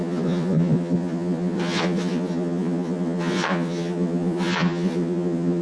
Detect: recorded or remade remade